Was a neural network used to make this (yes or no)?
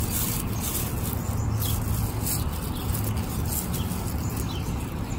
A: no